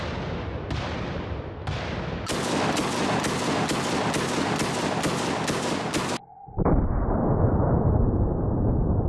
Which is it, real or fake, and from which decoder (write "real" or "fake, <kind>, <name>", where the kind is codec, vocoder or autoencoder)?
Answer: real